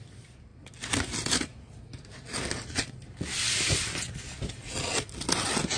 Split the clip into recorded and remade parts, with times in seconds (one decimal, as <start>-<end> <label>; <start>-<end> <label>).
0.0-5.8 recorded